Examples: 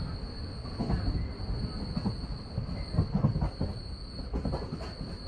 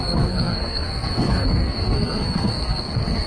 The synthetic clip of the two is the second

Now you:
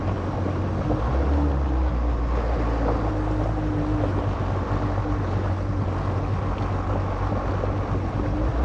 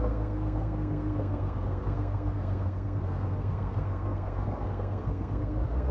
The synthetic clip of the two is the second